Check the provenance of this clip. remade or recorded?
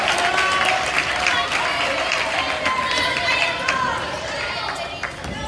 recorded